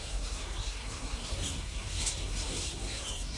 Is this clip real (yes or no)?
no